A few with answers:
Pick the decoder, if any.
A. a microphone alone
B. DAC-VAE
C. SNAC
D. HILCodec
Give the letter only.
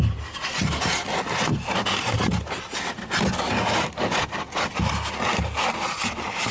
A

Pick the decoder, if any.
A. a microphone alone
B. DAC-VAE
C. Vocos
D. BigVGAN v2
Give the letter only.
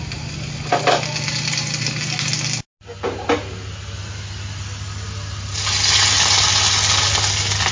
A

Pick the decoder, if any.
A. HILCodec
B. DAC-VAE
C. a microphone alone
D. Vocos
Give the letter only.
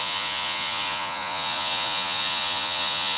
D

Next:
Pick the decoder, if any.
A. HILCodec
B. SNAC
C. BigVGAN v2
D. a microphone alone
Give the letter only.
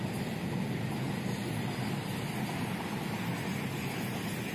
D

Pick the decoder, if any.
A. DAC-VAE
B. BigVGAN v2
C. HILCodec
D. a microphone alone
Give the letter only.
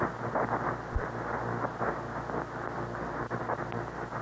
D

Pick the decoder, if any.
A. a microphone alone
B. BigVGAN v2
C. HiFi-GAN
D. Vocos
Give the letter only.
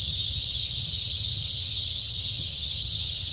C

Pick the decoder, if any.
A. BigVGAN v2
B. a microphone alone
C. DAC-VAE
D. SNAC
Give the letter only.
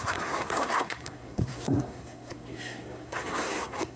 D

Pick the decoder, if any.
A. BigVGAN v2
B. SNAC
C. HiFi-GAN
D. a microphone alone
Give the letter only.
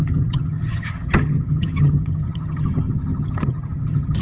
C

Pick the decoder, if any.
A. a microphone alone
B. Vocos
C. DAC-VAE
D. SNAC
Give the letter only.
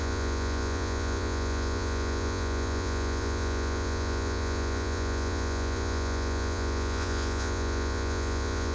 B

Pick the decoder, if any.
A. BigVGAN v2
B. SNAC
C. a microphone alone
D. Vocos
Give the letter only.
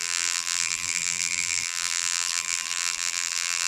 A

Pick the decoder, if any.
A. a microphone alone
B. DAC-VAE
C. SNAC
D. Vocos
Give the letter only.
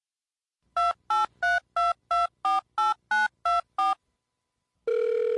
A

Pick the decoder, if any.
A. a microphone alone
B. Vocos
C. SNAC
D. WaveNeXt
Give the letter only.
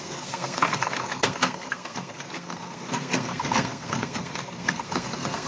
C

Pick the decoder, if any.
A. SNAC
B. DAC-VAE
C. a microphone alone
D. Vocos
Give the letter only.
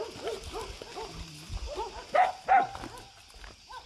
C